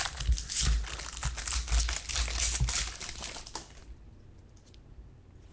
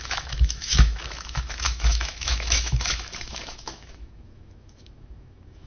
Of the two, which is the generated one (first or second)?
second